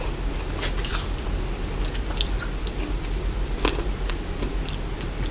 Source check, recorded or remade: recorded